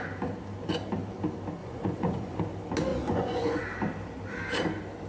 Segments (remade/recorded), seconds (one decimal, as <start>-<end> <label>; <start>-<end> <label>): 0.0-1.6 recorded; 1.6-2.4 remade; 2.4-2.9 recorded; 2.9-3.6 remade; 3.6-5.1 recorded

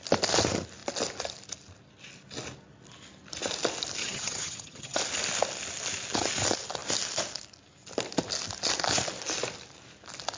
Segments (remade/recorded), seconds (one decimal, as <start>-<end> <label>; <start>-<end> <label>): 0.0-4.0 recorded; 4.0-5.0 remade; 5.0-10.4 recorded